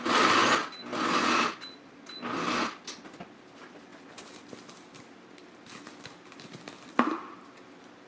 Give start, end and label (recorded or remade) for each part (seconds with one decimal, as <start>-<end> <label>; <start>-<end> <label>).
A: 0.0-8.1 recorded